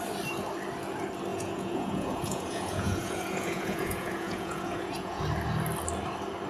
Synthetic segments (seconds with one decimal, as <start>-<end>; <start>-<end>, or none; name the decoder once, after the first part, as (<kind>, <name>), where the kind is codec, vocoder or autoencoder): 1.3-5.2 (vocoder, Vocos)